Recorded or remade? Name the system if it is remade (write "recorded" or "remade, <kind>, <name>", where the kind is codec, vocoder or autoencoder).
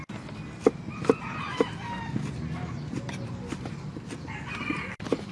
recorded